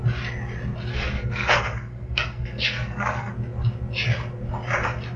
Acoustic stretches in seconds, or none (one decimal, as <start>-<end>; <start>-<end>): 0.0-0.9; 3.3-5.2